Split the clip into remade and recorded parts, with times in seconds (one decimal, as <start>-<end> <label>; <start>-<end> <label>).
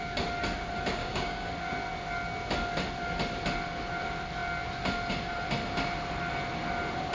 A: 0.0-1.0 recorded; 1.0-1.5 remade; 1.5-7.1 recorded